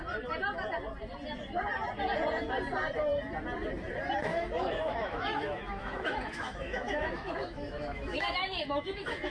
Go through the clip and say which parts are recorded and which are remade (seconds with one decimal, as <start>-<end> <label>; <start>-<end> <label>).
0.0-4.3 recorded; 4.3-9.3 remade

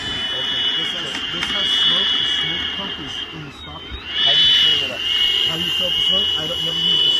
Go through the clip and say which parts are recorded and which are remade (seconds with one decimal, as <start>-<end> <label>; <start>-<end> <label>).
0.0-7.2 recorded